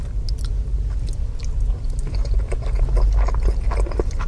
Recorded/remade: recorded